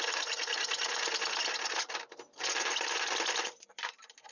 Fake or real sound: real